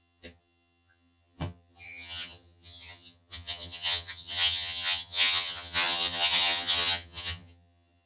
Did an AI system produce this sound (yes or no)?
yes